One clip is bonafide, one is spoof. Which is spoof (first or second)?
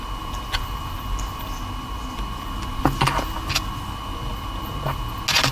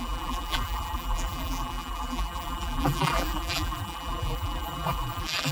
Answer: second